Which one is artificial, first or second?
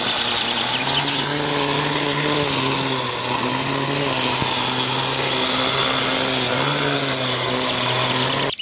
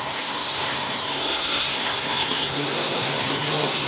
second